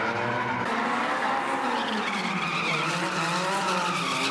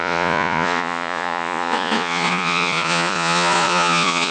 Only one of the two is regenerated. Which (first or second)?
second